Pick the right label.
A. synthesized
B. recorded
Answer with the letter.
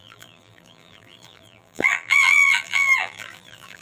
A